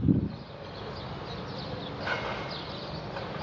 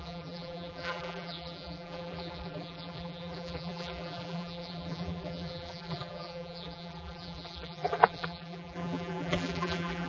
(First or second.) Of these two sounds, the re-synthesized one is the second